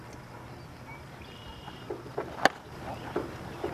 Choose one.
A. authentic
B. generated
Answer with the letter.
A